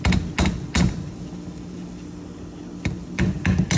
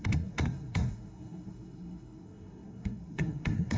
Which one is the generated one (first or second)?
second